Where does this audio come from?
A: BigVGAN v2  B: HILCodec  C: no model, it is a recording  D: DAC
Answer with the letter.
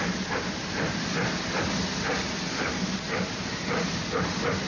C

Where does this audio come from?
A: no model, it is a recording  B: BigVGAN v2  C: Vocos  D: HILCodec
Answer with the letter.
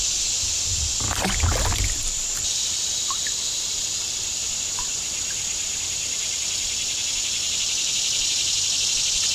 B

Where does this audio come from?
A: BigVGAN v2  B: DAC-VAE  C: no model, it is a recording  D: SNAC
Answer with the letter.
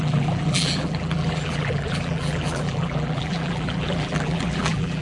A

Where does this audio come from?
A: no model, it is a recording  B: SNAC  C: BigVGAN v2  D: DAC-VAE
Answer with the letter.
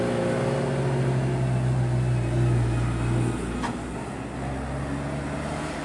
A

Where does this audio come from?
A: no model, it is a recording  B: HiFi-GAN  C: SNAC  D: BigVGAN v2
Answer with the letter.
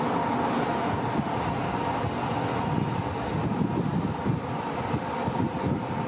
A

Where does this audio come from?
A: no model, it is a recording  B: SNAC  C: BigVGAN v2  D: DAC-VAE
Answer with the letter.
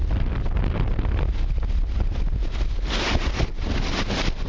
A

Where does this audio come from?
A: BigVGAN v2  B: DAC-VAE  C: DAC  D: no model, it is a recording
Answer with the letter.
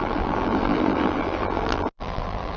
A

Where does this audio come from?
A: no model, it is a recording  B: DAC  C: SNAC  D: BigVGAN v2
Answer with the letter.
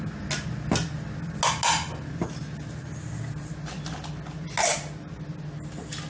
A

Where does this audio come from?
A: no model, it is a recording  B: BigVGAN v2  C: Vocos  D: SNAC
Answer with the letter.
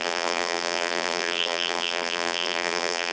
B